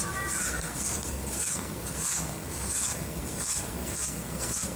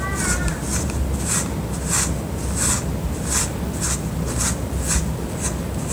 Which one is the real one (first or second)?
second